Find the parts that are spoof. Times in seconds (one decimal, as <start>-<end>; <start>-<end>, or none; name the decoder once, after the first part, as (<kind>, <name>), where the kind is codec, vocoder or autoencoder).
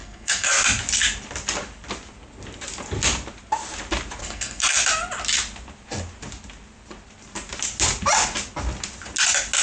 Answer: 0.0-0.5 (codec, SNAC); 4.2-4.8